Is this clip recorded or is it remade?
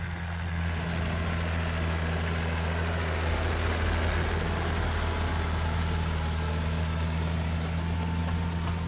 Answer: recorded